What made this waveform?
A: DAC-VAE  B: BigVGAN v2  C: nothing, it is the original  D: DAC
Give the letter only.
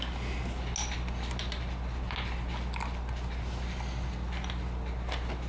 C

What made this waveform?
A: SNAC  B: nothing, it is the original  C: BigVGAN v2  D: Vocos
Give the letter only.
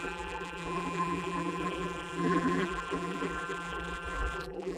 C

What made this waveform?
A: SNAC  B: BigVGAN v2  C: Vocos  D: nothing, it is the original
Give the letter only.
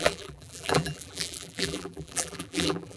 B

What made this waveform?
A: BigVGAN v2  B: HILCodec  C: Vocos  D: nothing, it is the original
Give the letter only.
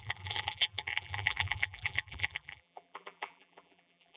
A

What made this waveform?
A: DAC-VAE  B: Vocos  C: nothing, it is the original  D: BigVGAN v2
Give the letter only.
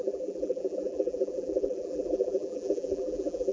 D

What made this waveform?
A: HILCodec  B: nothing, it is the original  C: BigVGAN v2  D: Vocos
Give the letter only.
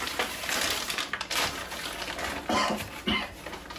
B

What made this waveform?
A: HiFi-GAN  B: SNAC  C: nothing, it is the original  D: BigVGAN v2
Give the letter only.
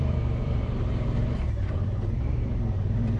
D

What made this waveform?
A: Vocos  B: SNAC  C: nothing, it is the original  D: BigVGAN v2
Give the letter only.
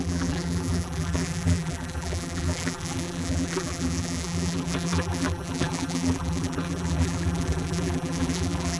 D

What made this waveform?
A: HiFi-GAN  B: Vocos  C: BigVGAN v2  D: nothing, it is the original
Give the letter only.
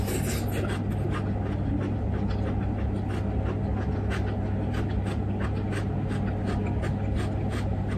D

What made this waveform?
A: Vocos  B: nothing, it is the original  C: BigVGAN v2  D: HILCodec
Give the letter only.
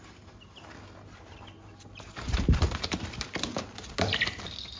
B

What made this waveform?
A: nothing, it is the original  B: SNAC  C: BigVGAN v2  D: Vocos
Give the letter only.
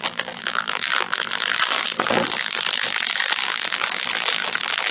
C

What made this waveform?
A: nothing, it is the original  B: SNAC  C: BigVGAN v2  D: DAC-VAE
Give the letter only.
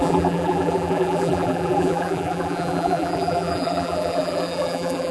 C